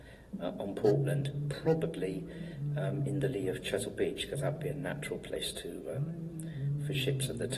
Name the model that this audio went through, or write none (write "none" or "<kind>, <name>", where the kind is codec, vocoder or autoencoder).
none